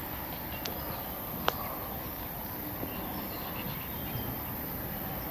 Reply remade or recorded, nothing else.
recorded